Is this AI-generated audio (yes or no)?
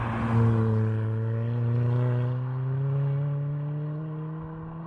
no